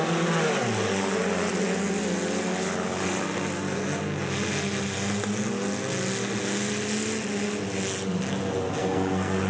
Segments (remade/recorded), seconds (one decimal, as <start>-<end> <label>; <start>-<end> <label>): 0.0-8.8 recorded; 8.8-9.5 remade